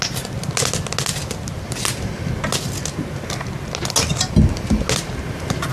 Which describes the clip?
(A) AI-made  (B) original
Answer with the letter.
B